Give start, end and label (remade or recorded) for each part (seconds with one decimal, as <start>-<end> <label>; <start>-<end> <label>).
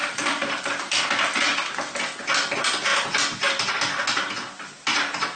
0.0-1.1 remade; 1.1-5.4 recorded